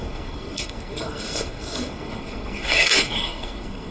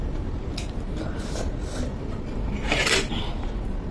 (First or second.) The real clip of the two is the second